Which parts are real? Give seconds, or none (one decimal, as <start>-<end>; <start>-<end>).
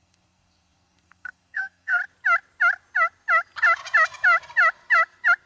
2.0-5.5